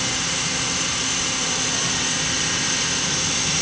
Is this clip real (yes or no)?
no